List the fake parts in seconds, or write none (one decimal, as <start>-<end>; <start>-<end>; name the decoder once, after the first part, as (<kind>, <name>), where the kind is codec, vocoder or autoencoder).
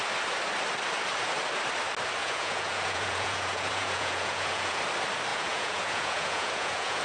2.2-4.8 (vocoder, Vocos); 5.3-7.0